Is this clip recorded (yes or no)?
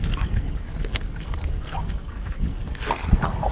no